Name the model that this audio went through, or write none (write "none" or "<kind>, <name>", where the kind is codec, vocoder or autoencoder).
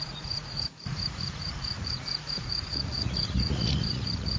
vocoder, Vocos